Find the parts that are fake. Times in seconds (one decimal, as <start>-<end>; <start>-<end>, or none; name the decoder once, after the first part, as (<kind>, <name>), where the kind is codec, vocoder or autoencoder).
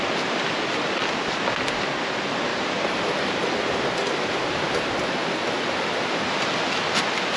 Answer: 2.5-3.5 (vocoder, BigVGAN v2)